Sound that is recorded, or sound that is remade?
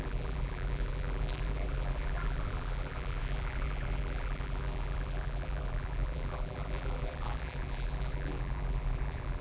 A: remade